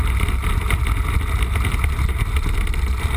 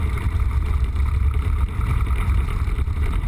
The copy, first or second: second